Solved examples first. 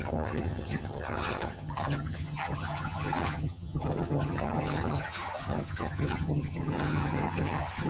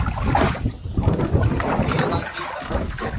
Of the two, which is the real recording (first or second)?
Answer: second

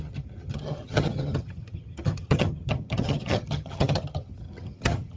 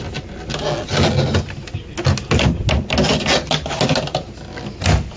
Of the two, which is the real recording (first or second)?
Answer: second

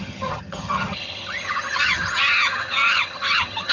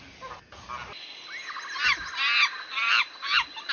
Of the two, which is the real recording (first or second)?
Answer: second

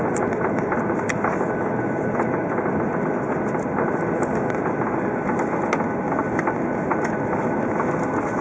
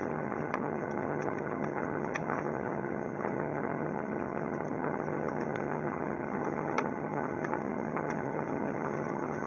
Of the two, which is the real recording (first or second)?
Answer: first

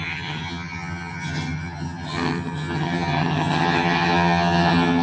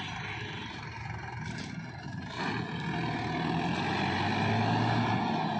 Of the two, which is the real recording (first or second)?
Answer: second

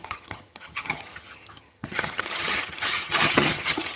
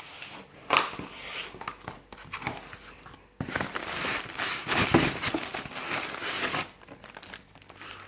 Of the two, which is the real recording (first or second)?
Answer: second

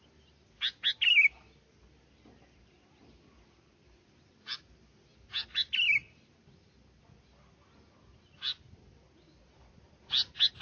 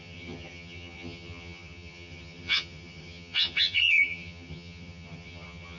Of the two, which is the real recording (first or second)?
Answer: first